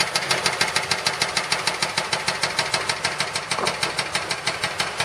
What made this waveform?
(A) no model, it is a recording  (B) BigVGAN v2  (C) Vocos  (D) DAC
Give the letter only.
A